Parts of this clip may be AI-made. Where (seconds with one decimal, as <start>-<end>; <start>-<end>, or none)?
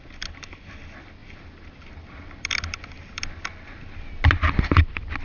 none